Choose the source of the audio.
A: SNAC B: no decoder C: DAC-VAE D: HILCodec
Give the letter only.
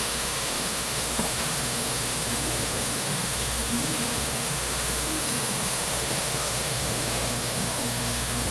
C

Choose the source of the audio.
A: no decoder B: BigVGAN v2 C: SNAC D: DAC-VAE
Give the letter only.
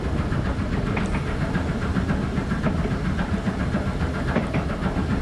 A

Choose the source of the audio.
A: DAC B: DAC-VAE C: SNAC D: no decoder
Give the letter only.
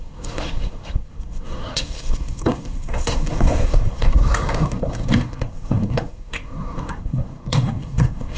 C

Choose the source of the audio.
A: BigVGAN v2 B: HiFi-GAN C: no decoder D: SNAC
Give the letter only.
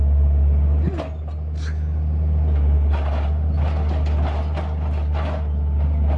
C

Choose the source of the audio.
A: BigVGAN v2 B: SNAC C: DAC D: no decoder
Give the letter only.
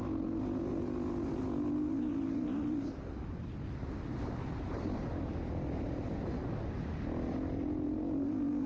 D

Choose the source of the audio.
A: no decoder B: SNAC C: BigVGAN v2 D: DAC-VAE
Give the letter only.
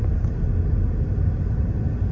A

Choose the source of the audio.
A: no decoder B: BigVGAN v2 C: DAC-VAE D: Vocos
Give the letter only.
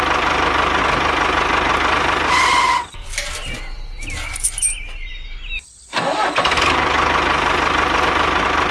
A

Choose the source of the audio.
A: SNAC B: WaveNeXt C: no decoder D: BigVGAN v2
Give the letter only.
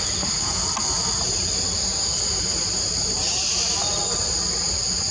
C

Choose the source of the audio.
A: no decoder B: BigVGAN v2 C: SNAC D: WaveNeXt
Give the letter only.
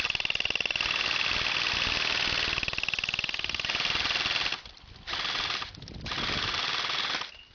A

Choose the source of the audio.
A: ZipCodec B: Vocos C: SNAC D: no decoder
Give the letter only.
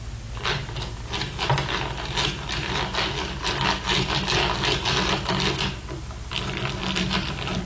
D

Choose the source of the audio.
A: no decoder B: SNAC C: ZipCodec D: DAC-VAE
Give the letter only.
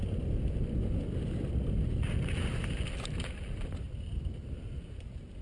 A